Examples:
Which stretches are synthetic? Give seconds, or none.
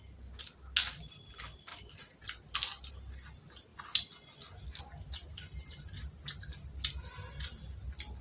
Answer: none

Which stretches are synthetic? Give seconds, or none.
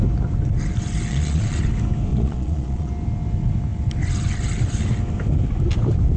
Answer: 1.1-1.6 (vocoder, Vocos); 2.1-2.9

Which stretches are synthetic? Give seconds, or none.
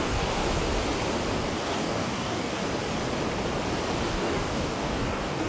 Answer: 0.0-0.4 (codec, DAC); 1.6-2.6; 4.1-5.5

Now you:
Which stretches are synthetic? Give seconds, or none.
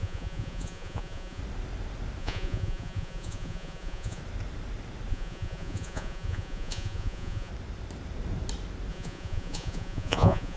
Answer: 0.0-1.4 (vocoder, Vocos); 2.2-4.2; 5.1-7.5; 8.9-10.6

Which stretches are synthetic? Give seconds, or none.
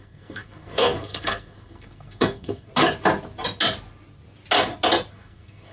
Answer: 0.0-2.7 (codec, SNAC); 5.1-5.7